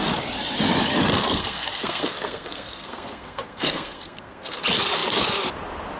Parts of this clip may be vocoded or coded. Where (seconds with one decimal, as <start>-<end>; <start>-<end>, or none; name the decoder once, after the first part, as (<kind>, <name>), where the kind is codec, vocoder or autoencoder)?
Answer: 1.2-4.6 (codec, SNAC)